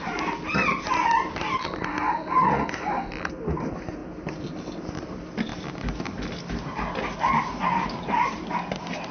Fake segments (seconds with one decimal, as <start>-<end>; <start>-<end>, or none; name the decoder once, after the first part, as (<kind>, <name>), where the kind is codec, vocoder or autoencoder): none